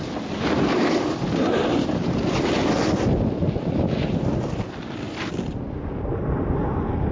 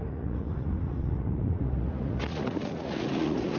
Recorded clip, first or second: first